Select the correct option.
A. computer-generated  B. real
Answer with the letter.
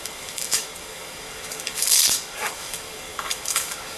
A